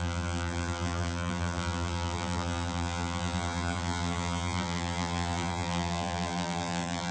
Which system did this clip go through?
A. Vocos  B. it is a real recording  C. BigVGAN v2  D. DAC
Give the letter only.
C